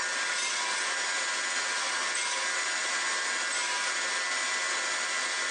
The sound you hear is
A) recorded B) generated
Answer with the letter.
A